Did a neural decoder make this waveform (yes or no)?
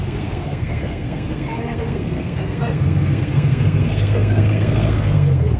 yes